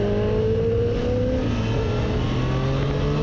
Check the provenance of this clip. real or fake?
real